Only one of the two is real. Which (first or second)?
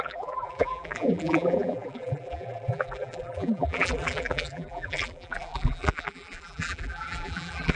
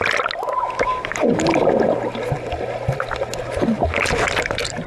second